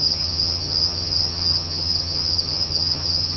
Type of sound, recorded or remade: remade